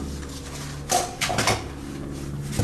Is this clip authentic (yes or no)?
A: yes